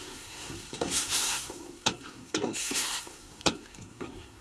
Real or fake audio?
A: fake